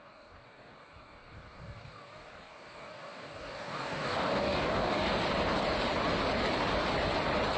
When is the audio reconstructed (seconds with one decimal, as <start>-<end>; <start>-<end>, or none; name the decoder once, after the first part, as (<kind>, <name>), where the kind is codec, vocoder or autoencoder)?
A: 0.0-5.1 (codec, DAC)